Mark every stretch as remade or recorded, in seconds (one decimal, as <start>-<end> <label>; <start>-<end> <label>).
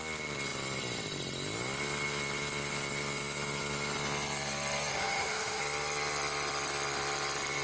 0.0-4.9 recorded; 4.9-5.6 remade; 5.6-7.6 recorded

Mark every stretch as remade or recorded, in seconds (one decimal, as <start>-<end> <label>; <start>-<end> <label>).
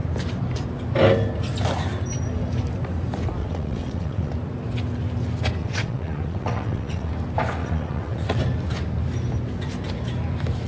0.0-3.4 recorded; 3.4-4.3 remade; 4.3-5.6 recorded; 5.6-7.1 remade; 7.1-7.6 recorded; 7.6-8.4 remade; 8.4-10.7 recorded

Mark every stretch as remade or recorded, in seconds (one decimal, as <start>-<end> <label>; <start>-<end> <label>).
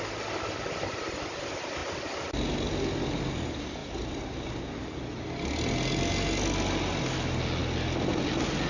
0.0-8.7 recorded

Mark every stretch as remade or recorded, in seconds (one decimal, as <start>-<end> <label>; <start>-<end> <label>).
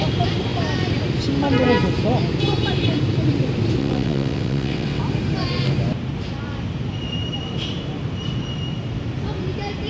0.0-3.8 recorded; 3.8-5.0 remade; 5.0-9.9 recorded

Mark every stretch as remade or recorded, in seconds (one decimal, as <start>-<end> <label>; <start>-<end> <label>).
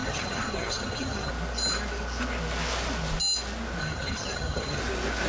0.0-1.3 remade; 1.3-3.8 recorded; 3.8-4.8 remade; 4.8-5.3 recorded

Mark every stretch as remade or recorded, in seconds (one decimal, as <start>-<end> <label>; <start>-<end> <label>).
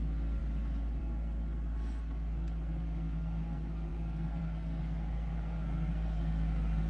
0.0-0.4 remade; 0.4-1.0 recorded; 1.0-6.9 remade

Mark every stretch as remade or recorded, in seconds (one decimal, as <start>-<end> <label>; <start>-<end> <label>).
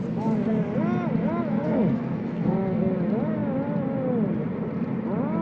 0.0-1.5 recorded; 1.5-2.9 remade; 2.9-5.4 recorded